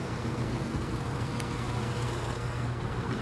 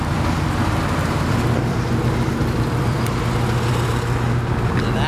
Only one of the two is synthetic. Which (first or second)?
first